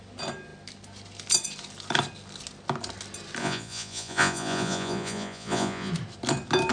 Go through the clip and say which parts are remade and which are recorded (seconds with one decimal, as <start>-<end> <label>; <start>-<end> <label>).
0.0-3.4 recorded; 3.4-5.9 remade; 5.9-6.7 recorded